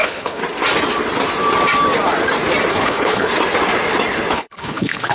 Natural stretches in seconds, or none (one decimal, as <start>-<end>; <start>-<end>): 0.4-2.7; 3.3-4.3